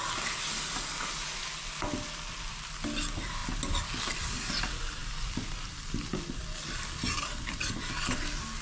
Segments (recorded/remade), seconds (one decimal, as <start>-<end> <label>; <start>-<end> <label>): 0.0-5.0 recorded; 5.0-7.9 remade; 7.9-8.6 recorded